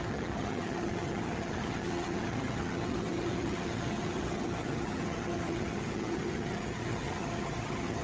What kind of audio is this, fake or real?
fake